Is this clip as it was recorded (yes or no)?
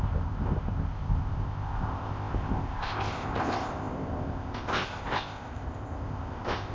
no